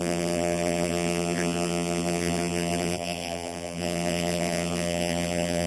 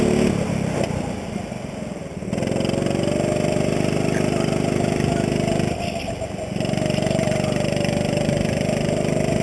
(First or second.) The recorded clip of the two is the second